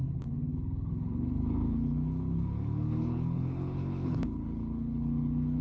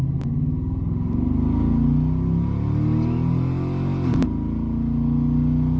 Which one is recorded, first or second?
second